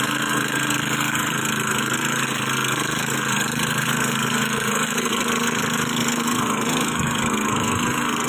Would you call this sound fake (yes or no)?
yes